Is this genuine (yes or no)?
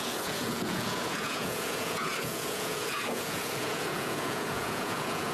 no